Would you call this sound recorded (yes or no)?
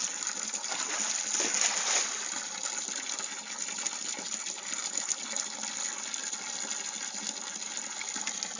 yes